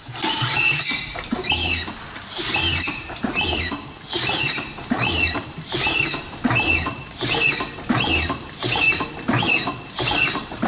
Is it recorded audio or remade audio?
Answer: remade